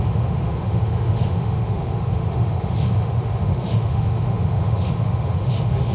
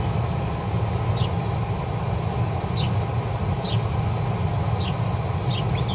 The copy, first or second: first